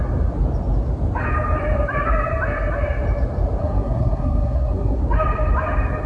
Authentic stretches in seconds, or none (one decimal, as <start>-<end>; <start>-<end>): 0.0-3.6; 5.0-6.1